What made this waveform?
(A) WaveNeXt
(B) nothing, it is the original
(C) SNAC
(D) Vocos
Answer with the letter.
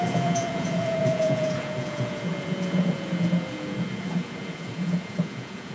D